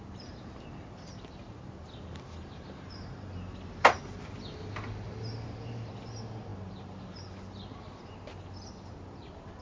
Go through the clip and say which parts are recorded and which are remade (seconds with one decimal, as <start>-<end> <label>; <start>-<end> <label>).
0.0-9.6 recorded